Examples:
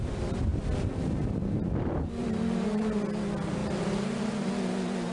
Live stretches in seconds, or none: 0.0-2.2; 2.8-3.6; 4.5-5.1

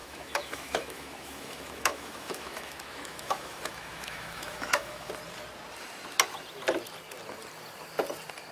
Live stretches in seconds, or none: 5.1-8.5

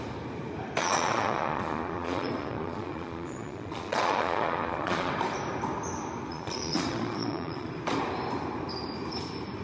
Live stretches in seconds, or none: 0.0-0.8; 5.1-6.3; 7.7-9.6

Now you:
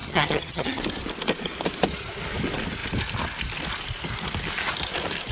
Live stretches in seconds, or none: 0.8-5.3

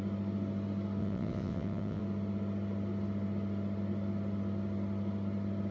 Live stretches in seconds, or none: 0.0-1.0; 2.0-5.7

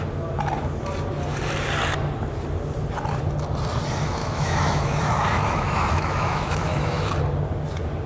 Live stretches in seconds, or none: 0.0-4.2; 7.1-8.1

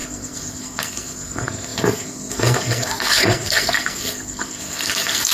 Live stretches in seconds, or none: none

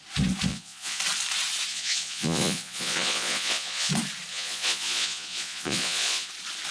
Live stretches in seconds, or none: 0.0-0.5; 1.0-1.7; 3.9-4.3; 6.3-6.7